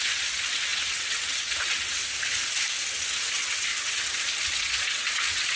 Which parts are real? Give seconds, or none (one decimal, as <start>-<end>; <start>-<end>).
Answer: 2.0-3.0; 3.7-4.4